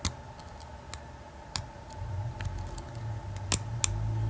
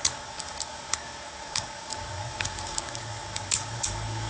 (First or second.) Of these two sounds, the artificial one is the second